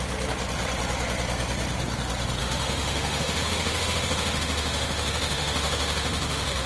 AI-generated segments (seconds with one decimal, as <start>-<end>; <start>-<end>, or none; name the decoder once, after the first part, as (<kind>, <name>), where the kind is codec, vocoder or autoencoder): 2.4-6.7 (autoencoder, DAC-VAE)

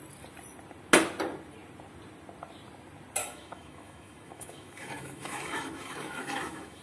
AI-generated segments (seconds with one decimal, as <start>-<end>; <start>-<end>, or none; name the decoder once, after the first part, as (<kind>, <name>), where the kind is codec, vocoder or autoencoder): 3.2-6.8 (autoencoder, DAC-VAE)

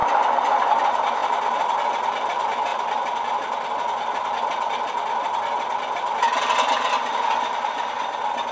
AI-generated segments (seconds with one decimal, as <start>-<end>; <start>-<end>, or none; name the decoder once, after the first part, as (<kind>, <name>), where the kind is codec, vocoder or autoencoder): none

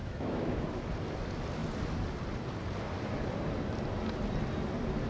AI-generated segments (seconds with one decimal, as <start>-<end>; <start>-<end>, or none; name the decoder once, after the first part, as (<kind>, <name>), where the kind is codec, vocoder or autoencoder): 0.0-0.8 (autoencoder, DAC-VAE)

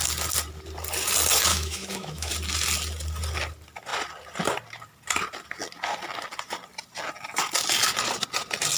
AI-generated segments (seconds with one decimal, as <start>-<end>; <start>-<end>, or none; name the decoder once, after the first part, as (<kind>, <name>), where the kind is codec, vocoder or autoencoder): 1.5-2.3 (autoencoder, DAC-VAE)

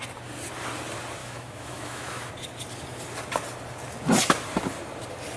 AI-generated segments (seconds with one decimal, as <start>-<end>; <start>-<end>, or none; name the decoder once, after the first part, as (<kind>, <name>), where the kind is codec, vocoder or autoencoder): 1.2-2.3 (autoencoder, DAC-VAE)

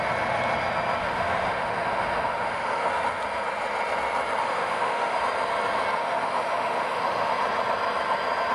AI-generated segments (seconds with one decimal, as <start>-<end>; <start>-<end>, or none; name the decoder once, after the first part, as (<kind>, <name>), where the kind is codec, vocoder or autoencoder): 1.0-2.9 (autoencoder, DAC-VAE); 4.4-5.2; 6.0-7.3

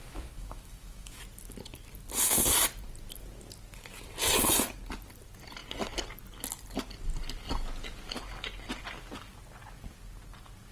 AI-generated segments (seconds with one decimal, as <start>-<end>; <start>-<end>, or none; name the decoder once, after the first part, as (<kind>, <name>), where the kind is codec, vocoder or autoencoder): 0.0-1.2 (autoencoder, DAC-VAE)